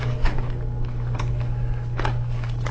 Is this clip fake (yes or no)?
yes